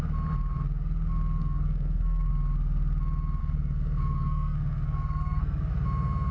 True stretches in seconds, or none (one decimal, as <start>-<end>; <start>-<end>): 0.0-1.4; 2.3-3.4; 5.7-6.3